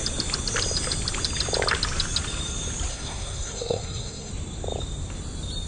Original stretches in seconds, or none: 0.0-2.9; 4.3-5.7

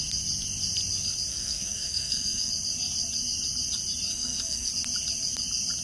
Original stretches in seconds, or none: 0.0-1.3; 2.5-4.1; 4.7-5.8

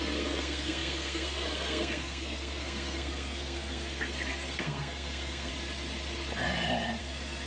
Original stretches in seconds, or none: 5.5-7.0